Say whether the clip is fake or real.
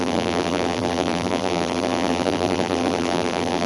fake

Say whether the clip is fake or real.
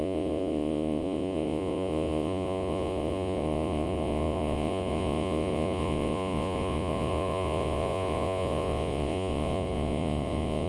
fake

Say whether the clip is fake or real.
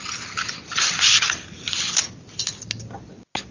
real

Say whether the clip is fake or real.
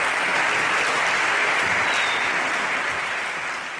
real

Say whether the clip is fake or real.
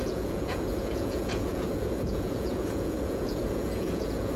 fake